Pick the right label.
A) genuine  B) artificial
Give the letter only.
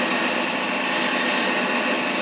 A